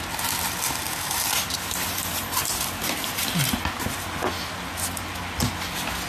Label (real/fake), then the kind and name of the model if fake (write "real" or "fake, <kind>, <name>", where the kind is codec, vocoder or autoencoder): real